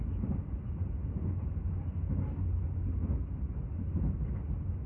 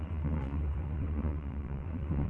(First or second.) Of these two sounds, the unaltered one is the first